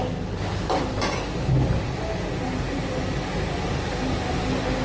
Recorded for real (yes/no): yes